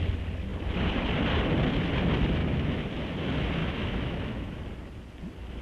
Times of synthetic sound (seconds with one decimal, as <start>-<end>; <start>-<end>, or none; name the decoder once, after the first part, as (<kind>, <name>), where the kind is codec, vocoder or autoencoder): 2.4-2.9 (autoencoder, DAC-VAE); 3.6-4.6

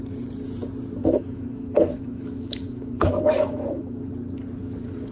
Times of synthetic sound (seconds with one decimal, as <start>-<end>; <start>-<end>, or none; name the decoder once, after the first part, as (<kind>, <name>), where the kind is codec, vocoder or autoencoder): 1.0-4.1 (autoencoder, DAC-VAE)

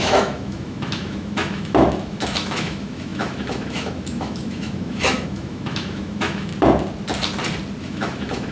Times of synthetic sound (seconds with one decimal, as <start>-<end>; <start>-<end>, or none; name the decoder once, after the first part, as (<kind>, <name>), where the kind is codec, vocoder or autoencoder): 0.0-6.5 (autoencoder, DAC-VAE); 7.8-8.5

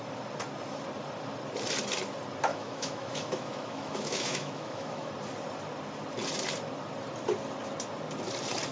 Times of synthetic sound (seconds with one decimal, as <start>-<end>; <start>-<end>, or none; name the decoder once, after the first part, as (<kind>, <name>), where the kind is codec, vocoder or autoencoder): 2.5-5.1 (autoencoder, DAC-VAE)

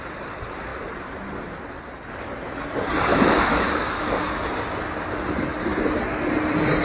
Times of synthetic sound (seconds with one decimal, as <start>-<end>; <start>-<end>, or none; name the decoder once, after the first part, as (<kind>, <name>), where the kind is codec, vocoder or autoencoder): 3.1-4.3 (autoencoder, DAC-VAE)

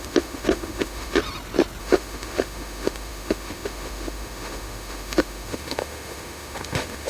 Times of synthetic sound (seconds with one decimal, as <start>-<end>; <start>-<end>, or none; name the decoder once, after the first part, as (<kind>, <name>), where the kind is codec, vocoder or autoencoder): 0.0-1.2 (autoencoder, DAC-VAE); 1.8-7.1

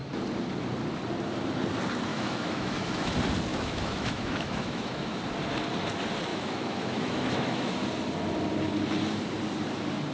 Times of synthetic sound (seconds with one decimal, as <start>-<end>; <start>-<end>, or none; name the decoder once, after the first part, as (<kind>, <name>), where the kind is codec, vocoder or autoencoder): 2.1-3.1 (autoencoder, DAC-VAE); 3.5-5.2; 6.3-7.7

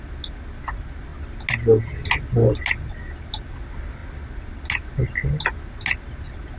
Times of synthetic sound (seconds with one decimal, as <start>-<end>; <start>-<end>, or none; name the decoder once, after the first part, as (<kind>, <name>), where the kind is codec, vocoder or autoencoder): none